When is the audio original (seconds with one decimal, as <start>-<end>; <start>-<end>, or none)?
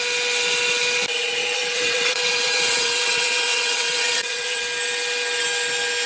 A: 0.0-1.4; 4.6-6.1